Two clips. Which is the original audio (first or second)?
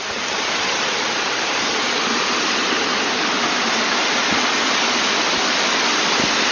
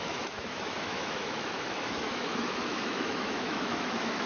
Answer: first